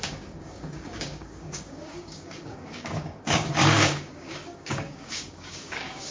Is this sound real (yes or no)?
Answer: no